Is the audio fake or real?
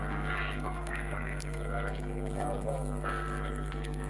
fake